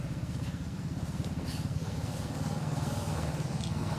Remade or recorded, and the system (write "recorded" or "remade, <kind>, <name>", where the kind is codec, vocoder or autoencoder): remade, codec, SNAC